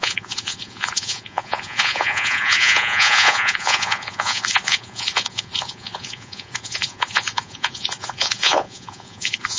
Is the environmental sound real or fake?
fake